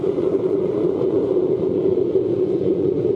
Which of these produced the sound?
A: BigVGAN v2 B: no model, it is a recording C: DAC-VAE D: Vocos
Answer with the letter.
D